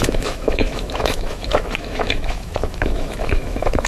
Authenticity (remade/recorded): remade